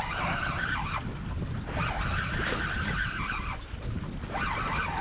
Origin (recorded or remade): recorded